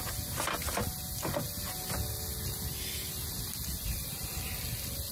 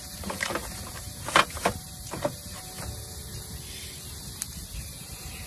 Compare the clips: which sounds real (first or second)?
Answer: first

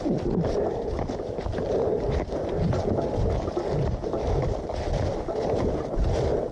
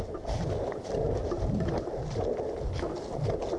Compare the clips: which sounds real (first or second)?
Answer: second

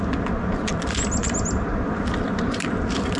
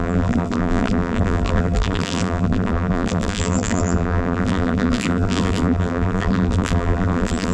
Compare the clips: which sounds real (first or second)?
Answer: first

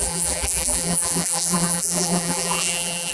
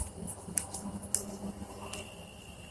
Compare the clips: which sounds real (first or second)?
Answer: second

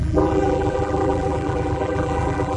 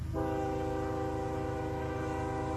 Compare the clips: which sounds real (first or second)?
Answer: second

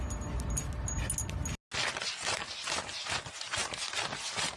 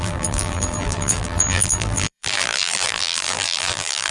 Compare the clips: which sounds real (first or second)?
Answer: first